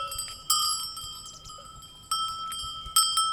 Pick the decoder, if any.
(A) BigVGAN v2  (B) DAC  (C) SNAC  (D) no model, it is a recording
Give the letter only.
D